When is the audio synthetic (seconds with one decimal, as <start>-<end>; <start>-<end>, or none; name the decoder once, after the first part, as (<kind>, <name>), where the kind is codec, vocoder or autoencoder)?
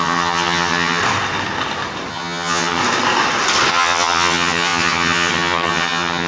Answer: 0.0-1.0 (vocoder, HiFi-GAN); 2.1-2.8; 3.7-6.3